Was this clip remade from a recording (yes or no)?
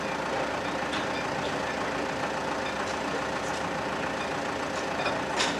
no